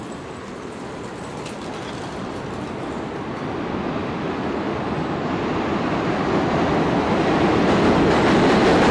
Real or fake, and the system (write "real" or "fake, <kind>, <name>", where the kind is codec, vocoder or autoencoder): real